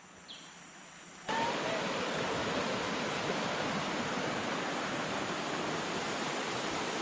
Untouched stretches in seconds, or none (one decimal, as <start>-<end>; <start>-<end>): 0.0-2.4; 6.2-7.0